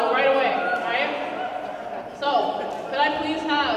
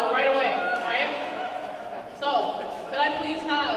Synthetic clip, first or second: second